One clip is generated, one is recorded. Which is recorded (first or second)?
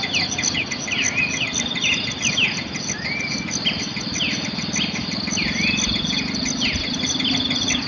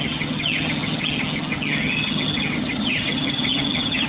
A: first